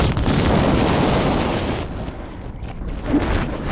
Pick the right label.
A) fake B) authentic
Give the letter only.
B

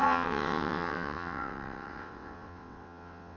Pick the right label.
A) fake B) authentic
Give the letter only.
A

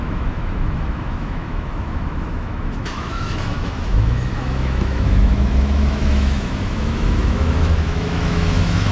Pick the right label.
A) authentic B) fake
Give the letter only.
B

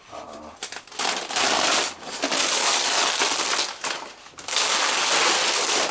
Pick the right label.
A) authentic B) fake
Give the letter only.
A